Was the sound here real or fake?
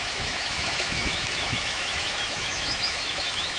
fake